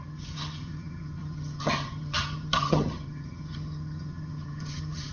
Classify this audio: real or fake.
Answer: fake